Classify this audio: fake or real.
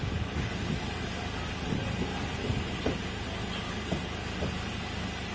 real